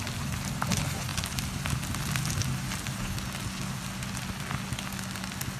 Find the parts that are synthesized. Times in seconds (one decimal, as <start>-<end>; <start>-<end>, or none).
none